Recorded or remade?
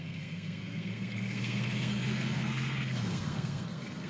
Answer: remade